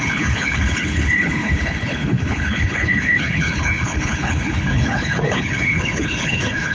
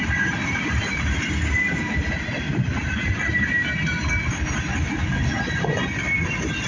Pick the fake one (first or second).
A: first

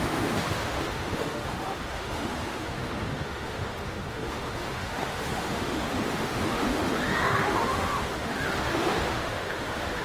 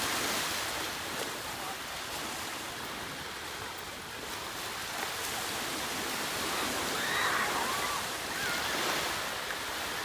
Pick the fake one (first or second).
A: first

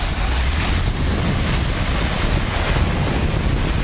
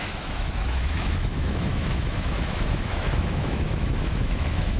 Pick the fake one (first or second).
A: second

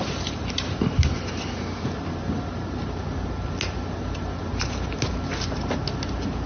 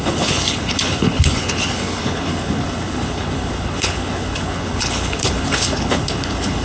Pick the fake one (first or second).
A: second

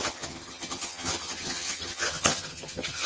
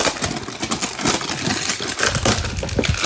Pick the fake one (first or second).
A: first